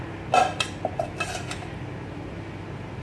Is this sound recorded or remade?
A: recorded